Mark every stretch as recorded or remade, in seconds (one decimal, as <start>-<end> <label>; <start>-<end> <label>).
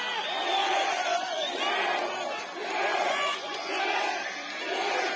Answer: 0.0-0.6 recorded; 0.6-1.6 remade; 1.6-2.9 recorded; 2.9-3.8 remade; 3.8-5.2 recorded